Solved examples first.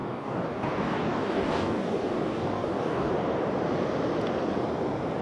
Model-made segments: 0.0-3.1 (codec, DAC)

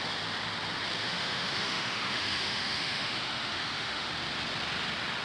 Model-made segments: 1.0-4.1 (autoencoder, DAC-VAE)

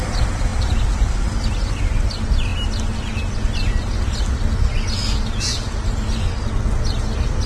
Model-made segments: none

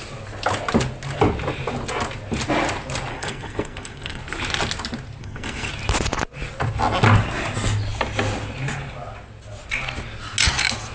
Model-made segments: 3.1-4.2 (codec, SNAC); 5.2-5.7